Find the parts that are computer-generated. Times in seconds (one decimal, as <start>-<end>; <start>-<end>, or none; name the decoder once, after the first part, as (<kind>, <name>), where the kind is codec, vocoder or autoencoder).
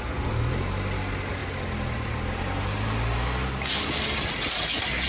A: none